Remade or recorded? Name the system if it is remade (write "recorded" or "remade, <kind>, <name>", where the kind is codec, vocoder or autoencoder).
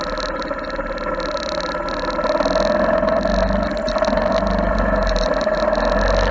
recorded